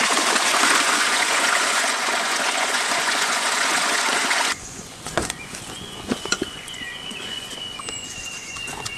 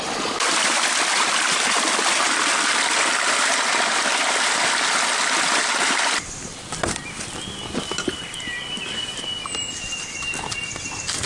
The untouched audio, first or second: second